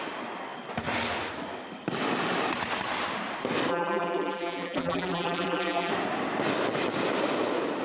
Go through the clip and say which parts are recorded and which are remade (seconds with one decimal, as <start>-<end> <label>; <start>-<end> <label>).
0.0-3.7 recorded; 3.7-5.9 remade; 5.9-7.8 recorded